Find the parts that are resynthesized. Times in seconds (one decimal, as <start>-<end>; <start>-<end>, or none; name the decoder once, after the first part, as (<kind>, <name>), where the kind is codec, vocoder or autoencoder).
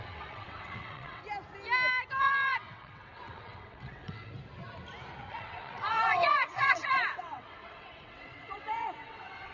0.0-1.2 (vocoder, WaveNeXt); 2.2-4.3; 5.3-9.5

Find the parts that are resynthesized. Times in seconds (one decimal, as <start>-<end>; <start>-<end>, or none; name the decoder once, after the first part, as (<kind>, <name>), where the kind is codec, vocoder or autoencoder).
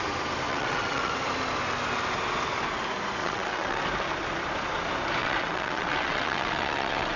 0.5-1.1 (vocoder, WaveNeXt); 3.2-3.8; 5.2-7.2